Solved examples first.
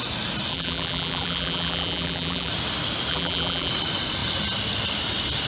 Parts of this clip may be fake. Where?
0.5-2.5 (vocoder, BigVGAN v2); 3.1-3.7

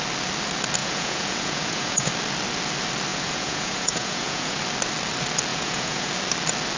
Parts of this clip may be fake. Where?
0.8-2.1 (vocoder, Vocos); 3.1-4.6; 5.5-6.1

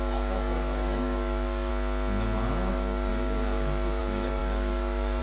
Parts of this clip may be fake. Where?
0.0-1.7 (codec, DAC); 2.7-5.2